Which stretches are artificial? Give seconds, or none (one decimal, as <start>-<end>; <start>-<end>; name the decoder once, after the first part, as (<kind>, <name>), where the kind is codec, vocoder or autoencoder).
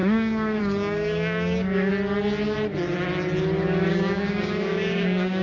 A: 0.0-1.9 (codec, DAC); 3.9-5.4